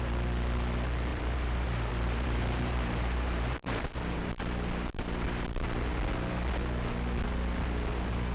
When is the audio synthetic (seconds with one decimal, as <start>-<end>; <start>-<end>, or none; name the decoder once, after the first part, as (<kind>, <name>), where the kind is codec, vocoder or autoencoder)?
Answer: 1.1-4.3 (vocoder, BigVGAN v2)